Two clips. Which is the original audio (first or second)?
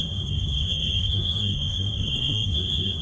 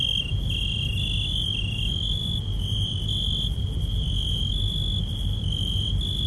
second